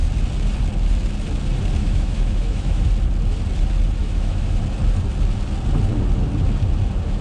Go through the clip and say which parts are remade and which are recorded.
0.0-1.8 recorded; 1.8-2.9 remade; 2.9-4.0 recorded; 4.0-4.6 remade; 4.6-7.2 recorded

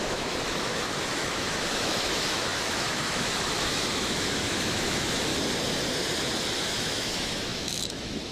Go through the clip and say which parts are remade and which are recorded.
0.0-5.3 remade; 5.3-6.6 recorded; 6.6-8.3 remade

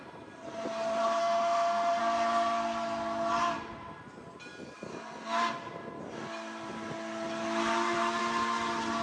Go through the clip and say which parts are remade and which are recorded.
0.0-1.2 recorded; 1.2-2.0 remade; 2.0-9.0 recorded

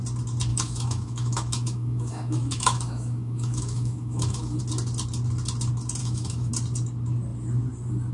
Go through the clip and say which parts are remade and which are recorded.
0.0-0.5 recorded; 0.5-4.6 remade; 4.6-6.0 recorded; 6.0-6.5 remade; 6.5-8.1 recorded

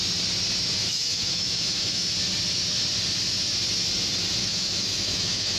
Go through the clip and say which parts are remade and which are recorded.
0.0-0.9 recorded; 0.9-2.1 remade; 2.1-4.4 recorded; 4.4-5.6 remade

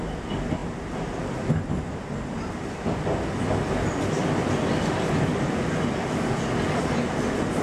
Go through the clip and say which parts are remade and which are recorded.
0.0-7.6 recorded

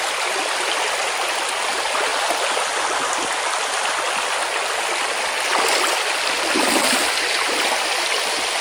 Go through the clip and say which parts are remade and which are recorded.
0.0-8.6 recorded

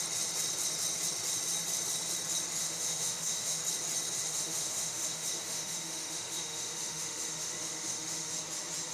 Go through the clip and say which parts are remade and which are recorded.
0.0-2.6 recorded; 2.6-3.6 remade; 3.6-4.2 recorded; 4.2-8.3 remade; 8.3-8.9 recorded